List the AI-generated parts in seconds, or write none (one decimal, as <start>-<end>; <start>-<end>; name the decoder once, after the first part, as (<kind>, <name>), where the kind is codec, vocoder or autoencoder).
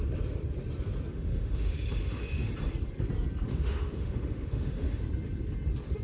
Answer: 1.1-2.5 (autoencoder, DAC-VAE); 3.5-5.0